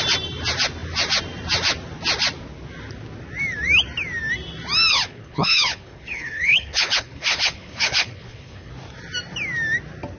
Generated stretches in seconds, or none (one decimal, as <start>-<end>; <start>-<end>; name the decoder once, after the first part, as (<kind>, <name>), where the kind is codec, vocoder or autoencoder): 4.9-8.7 (codec, HILCodec)